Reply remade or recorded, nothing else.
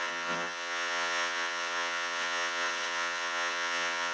remade